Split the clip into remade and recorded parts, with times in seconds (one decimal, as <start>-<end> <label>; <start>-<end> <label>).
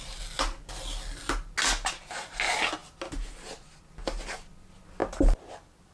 0.0-5.9 recorded